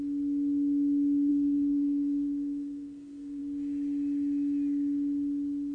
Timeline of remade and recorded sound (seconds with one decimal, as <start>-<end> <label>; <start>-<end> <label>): 0.0-1.3 recorded; 1.3-3.4 remade; 3.4-5.7 recorded